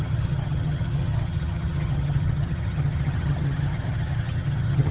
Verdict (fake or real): fake